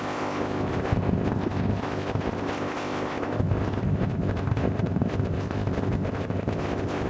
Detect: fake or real fake